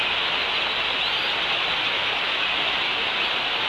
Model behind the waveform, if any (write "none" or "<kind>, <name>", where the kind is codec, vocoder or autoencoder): none